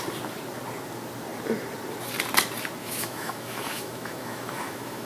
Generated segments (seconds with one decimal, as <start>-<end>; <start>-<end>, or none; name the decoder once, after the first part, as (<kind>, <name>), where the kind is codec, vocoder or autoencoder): 2.8-5.1 (autoencoder, DAC-VAE)